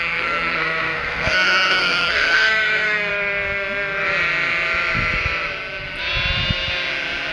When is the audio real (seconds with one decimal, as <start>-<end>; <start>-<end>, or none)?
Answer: 3.1-7.3